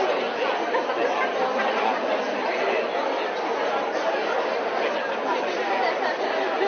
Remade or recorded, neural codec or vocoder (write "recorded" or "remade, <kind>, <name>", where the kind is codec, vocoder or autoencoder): recorded